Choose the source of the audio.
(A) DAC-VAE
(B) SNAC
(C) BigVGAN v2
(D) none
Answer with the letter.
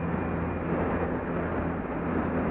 D